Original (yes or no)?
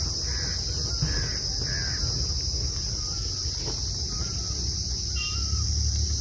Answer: yes